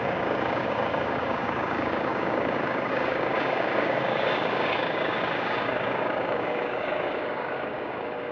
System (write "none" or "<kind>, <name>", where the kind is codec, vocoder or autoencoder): codec, DAC